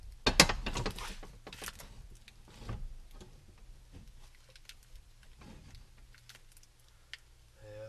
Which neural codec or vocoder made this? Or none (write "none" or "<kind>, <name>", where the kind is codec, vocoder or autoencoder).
none